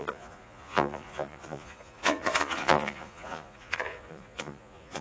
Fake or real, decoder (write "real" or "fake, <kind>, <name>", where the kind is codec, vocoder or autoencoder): fake, vocoder, Vocos